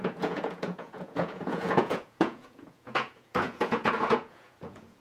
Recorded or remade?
remade